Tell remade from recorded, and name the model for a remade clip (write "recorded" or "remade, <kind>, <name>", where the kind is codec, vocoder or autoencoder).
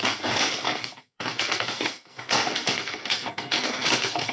remade, codec, SNAC